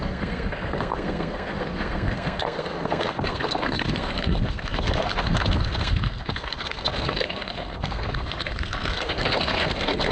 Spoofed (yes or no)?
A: yes